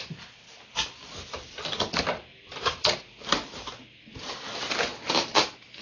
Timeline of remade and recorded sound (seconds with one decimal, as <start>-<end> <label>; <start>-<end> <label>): 0.0-2.3 recorded; 2.3-2.9 remade; 2.9-5.8 recorded